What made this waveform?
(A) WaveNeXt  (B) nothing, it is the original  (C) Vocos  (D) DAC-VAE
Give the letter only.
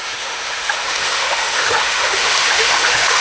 D